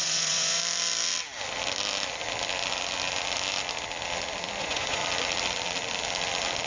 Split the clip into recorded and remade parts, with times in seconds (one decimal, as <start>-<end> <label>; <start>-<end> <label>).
0.0-0.6 remade; 0.6-4.6 recorded; 4.6-5.0 remade; 5.0-6.7 recorded